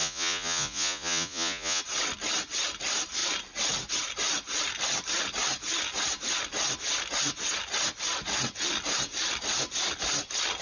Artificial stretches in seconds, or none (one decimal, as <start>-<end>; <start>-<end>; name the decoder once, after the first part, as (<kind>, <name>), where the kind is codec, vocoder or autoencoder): 0.0-1.8 (vocoder, Vocos)